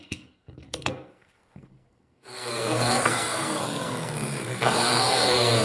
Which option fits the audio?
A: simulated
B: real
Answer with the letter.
A